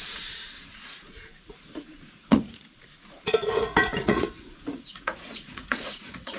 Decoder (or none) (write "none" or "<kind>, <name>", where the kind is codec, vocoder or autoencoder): vocoder, Vocos